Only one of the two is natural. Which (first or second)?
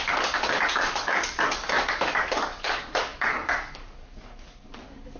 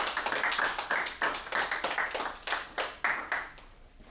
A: second